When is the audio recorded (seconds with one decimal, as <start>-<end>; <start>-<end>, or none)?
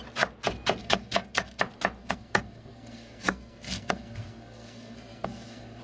0.0-0.8; 1.6-2.0